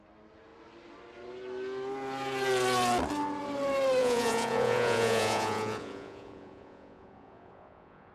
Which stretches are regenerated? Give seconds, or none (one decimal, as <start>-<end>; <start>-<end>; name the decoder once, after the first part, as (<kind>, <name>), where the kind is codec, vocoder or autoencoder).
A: 4.0-8.1 (vocoder, Vocos)